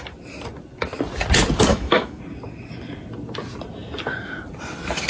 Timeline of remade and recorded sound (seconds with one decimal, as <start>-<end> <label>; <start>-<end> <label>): 0.0-1.7 recorded; 1.7-2.2 remade; 2.2-5.1 recorded